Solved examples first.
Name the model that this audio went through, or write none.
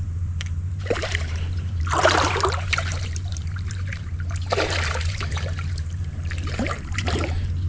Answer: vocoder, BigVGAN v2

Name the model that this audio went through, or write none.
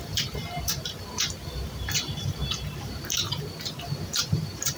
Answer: vocoder, BigVGAN v2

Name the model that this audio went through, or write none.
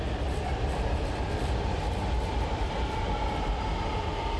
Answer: none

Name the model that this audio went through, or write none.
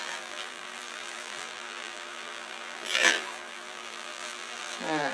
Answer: vocoder, BigVGAN v2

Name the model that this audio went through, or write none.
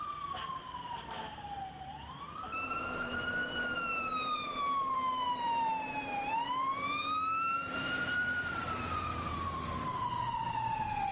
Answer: vocoder, BigVGAN v2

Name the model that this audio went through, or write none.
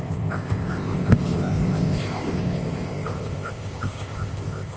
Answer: codec, ZipCodec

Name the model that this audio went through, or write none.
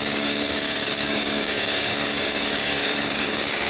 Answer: codec, DAC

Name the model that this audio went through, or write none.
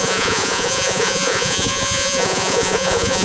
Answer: vocoder, Vocos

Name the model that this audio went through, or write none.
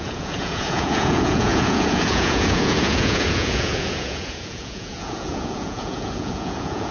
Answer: vocoder, Vocos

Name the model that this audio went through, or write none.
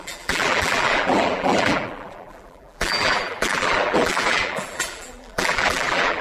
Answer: vocoder, BigVGAN v2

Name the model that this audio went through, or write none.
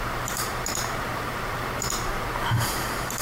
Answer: vocoder, BigVGAN v2